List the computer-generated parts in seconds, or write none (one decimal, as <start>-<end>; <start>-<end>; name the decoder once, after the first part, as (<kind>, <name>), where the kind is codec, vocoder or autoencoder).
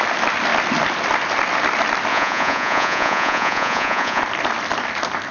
2.1-4.2 (vocoder, Vocos)